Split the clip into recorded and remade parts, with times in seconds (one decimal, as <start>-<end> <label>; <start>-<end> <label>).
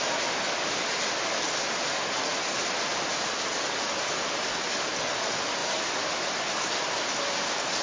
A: 0.0-7.8 recorded